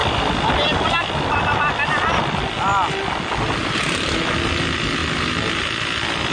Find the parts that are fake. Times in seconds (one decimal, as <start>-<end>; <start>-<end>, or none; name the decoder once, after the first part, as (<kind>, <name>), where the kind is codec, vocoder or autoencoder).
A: 0.0-0.5 (vocoder, BigVGAN v2)